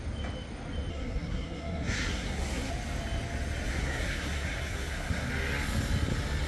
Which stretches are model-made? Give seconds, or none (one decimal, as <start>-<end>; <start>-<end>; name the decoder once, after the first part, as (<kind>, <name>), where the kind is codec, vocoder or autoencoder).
0.9-2.7 (codec, SNAC); 3.7-5.3